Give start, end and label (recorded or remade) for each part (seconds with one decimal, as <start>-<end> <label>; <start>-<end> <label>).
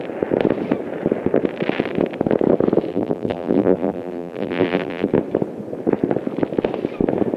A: 0.0-2.9 recorded; 2.9-5.1 remade; 5.1-7.4 recorded